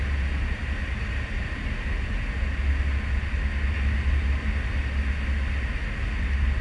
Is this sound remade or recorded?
recorded